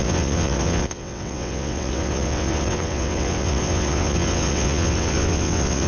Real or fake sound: fake